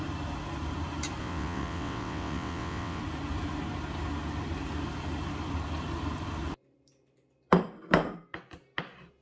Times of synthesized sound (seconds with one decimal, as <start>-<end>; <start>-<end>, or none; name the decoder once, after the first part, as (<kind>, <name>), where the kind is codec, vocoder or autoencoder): 1.2-3.0 (vocoder, WaveNeXt)